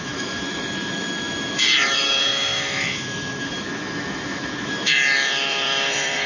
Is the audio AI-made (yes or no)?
yes